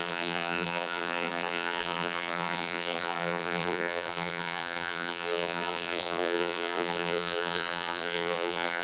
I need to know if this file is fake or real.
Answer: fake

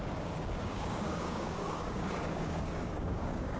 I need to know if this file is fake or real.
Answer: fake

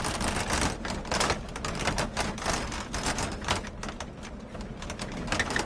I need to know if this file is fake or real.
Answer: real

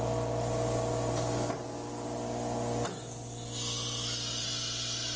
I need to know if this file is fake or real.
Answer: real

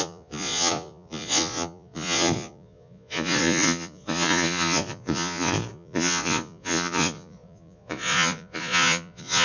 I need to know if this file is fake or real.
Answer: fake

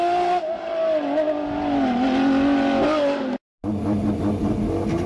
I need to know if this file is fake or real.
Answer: real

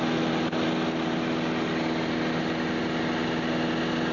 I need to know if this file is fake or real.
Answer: real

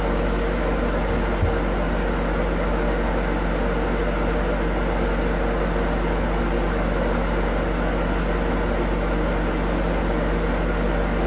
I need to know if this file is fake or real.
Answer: real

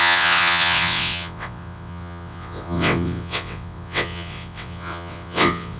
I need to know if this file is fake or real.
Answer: fake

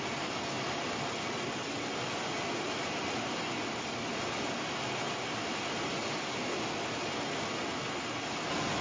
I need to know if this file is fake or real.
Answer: real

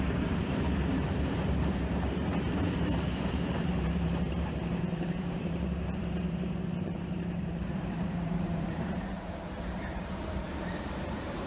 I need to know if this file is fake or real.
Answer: fake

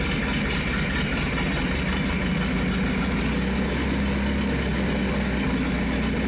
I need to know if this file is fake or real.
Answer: real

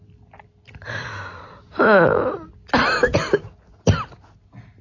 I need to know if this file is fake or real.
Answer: real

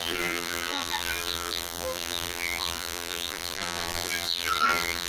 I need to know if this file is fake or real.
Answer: fake